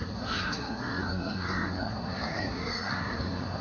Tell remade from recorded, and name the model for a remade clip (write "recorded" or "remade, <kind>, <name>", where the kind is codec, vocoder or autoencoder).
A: remade, codec, SNAC